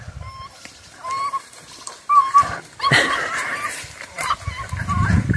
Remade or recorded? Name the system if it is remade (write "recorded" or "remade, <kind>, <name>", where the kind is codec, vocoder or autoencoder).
recorded